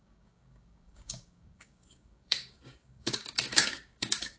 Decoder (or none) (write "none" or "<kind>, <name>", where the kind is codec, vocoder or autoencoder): codec, DAC